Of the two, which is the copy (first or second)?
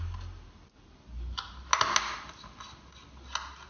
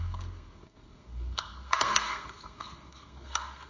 second